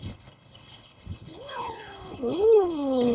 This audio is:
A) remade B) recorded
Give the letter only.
A